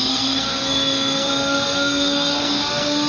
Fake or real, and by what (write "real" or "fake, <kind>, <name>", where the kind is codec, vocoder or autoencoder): fake, codec, SNAC